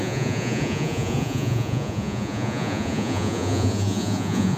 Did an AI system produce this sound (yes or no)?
yes